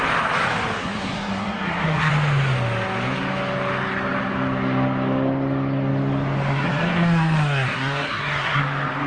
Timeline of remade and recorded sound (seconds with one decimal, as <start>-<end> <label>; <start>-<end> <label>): 0.0-0.8 recorded; 0.8-2.1 remade; 2.1-6.5 recorded; 6.5-8.6 remade; 8.6-9.1 recorded